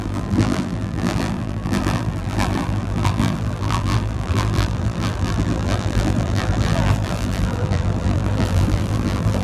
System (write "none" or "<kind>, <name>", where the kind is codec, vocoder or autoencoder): vocoder, BigVGAN v2